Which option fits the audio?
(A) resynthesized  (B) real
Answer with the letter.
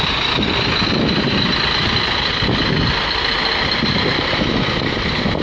B